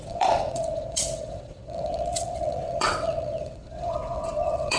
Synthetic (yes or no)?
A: yes